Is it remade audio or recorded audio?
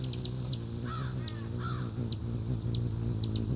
recorded